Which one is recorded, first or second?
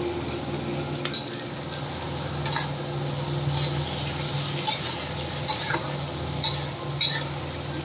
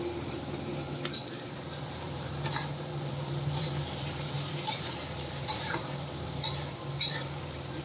first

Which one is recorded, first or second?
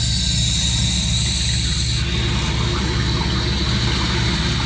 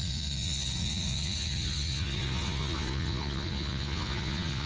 first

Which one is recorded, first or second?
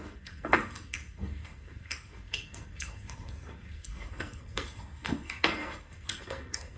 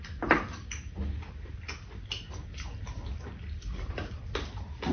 second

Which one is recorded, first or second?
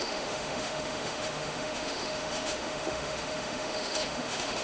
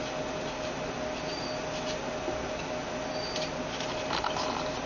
second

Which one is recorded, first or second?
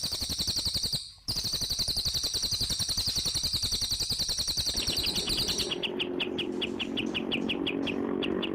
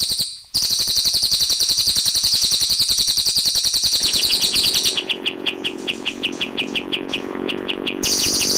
first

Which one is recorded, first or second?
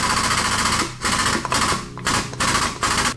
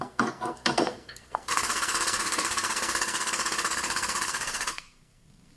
first